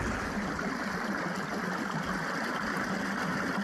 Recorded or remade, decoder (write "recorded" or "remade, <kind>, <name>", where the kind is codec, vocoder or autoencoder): recorded